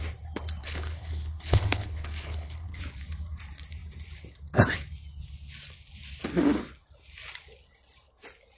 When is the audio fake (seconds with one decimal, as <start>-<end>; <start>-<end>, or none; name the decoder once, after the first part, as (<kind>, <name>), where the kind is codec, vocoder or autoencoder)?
0.6-2.8 (codec, HILCodec)